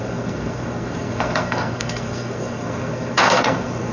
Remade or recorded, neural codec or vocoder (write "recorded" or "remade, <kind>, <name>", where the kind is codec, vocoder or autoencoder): remade, codec, SNAC